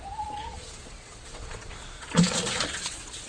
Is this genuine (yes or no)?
no